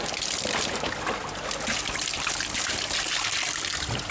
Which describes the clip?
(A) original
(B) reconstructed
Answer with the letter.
A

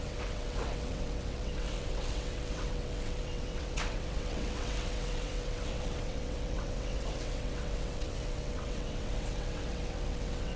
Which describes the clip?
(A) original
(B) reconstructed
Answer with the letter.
B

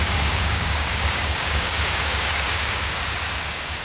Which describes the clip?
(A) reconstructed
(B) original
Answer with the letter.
A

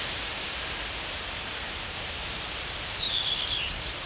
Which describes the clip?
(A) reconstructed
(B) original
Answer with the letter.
B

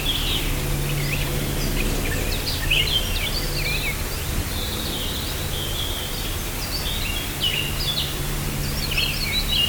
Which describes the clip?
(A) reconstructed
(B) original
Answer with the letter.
B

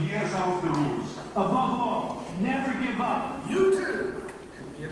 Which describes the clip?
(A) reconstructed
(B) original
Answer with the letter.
B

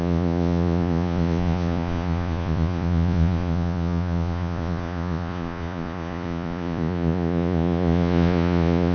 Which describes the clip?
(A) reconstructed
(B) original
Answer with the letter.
A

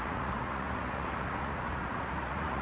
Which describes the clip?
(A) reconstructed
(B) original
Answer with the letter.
A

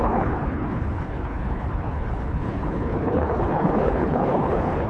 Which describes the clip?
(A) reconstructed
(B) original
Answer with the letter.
A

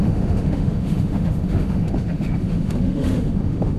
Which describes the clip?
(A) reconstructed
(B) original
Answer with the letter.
A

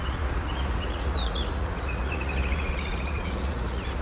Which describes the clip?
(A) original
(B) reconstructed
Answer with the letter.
B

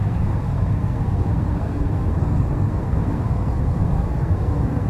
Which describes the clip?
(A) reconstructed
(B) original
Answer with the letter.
A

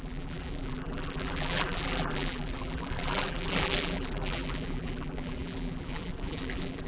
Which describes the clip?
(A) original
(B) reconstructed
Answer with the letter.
B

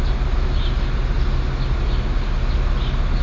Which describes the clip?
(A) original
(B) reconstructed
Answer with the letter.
A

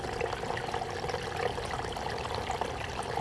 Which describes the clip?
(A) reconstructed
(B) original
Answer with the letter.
B